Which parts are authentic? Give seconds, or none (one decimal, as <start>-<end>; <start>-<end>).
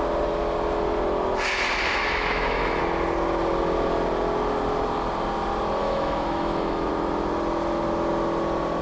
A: 0.0-1.9; 2.8-5.8; 6.9-8.8